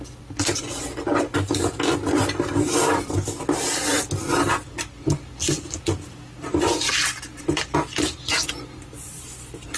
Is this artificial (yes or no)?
no